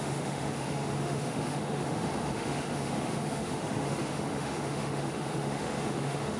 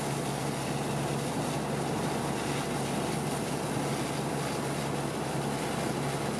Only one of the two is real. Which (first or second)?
second